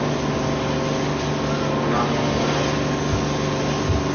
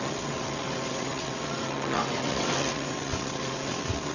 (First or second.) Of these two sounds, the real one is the first